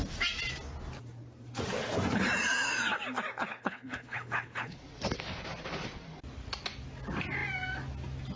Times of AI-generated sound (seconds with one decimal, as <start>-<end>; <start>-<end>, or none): 3.5-4.8